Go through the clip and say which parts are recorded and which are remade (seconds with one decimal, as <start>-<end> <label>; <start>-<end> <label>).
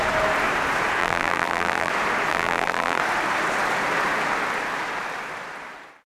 0.0-1.0 recorded; 1.0-1.9 remade; 1.9-2.3 recorded; 2.3-3.0 remade; 3.0-6.2 recorded